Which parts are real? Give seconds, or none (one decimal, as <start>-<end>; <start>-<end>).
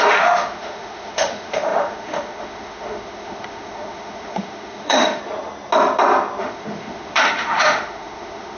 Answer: 5.2-6.4